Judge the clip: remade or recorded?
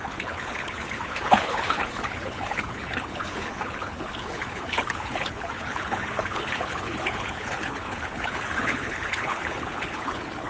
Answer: remade